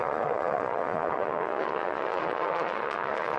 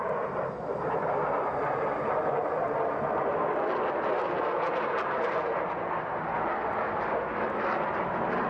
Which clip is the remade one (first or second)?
first